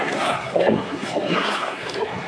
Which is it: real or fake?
fake